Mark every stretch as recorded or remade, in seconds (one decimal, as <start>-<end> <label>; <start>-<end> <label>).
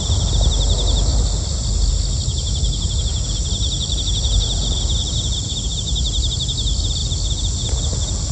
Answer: 0.0-8.3 recorded